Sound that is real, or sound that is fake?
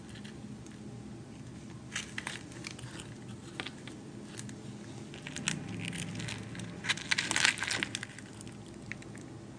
real